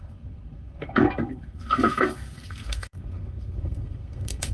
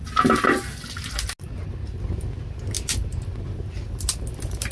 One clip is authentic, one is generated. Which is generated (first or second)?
first